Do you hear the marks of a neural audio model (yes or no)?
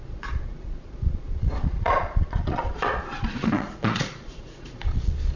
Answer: yes